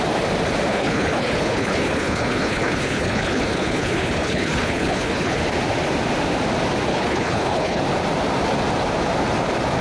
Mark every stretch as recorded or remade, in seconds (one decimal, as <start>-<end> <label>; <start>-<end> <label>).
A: 0.0-0.7 recorded; 0.7-5.4 remade; 5.4-6.9 recorded; 6.9-7.8 remade; 7.8-9.8 recorded